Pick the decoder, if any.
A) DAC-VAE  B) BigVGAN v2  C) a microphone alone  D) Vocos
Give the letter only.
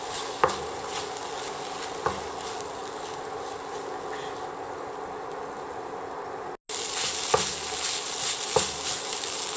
C